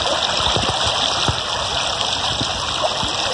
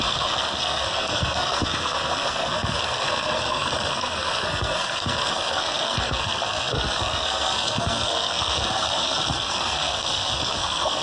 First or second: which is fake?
second